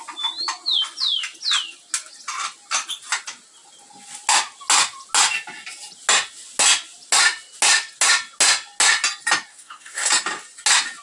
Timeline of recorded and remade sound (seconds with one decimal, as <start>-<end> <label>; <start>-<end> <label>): 0.0-9.5 recorded; 9.5-10.1 remade; 10.1-11.0 recorded